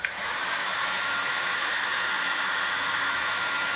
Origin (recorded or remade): remade